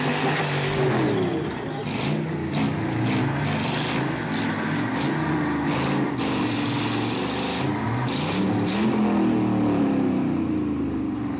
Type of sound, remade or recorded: recorded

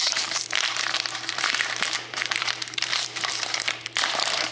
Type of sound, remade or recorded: remade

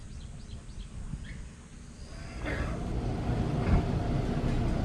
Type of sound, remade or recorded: recorded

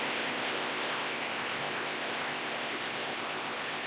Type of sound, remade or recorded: remade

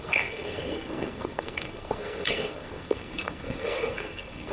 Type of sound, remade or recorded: remade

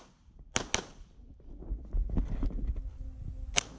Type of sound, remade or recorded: recorded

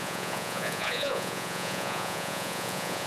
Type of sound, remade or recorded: remade